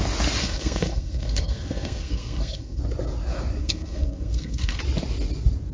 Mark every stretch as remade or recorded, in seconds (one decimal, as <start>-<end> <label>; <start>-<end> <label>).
0.0-0.4 recorded; 0.4-2.8 remade; 2.8-3.6 recorded; 3.6-4.8 remade; 4.8-5.7 recorded